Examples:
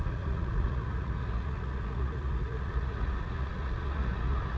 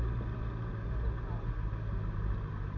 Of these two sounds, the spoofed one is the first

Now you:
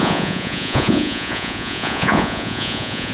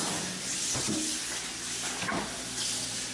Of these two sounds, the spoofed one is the first